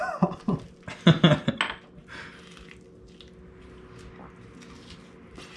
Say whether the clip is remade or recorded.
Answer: recorded